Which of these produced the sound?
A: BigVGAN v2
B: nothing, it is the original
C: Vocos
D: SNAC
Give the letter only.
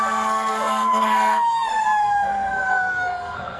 D